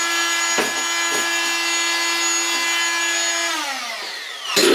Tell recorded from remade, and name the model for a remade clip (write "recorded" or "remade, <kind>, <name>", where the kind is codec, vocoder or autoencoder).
recorded